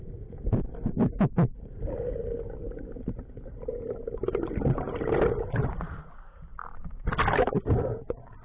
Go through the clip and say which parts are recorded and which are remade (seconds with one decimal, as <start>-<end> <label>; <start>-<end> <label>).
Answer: 0.0-8.4 recorded